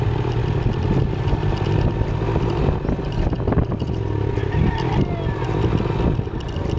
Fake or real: real